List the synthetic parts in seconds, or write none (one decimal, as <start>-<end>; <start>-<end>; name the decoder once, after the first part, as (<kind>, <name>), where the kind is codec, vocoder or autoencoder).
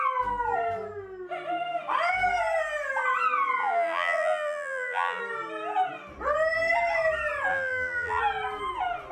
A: 3.6-5.2 (vocoder, BigVGAN v2); 7.5-8.2